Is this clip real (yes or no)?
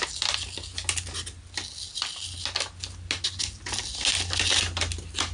yes